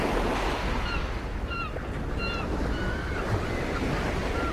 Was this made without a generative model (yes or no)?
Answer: yes